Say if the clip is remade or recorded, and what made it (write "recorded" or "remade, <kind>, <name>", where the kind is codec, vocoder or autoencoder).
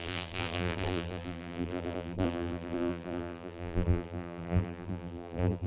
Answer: remade, vocoder, BigVGAN v2